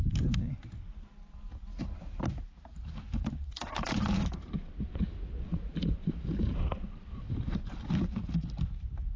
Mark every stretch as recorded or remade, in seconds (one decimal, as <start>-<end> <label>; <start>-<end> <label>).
0.0-2.7 recorded; 2.7-4.0 remade; 4.0-5.5 recorded; 5.5-7.6 remade; 7.6-9.2 recorded